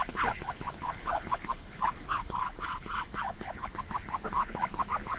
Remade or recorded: remade